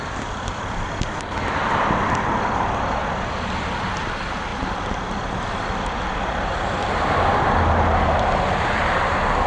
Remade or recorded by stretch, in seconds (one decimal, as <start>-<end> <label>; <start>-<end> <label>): 0.0-4.5 recorded; 4.5-7.1 remade; 7.1-9.5 recorded